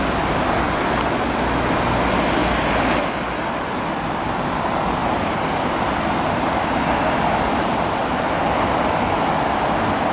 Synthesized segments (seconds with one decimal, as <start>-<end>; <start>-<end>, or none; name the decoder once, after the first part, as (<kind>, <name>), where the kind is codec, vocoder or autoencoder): none